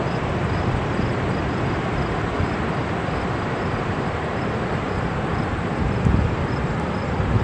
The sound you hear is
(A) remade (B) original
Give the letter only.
B